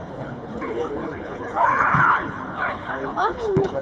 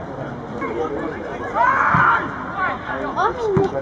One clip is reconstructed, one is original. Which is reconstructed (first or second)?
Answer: first